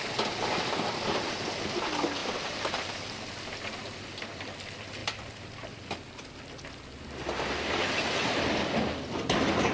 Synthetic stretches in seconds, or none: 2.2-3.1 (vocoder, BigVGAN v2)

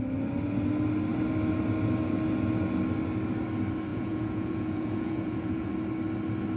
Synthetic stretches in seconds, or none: 3.9-5.7 (vocoder, Vocos)

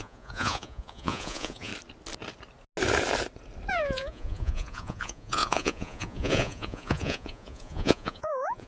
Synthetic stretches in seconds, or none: 0.0-1.7 (vocoder, Vocos); 3.7-8.7